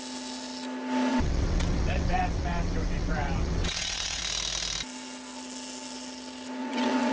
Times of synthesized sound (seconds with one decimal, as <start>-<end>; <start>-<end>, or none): 1.1-4.2; 6.6-7.1